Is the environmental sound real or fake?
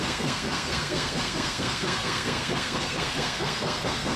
fake